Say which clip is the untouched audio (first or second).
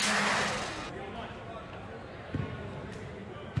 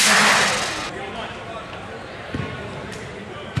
first